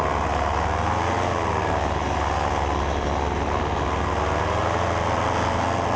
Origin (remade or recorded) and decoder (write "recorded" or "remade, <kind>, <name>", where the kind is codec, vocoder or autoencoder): recorded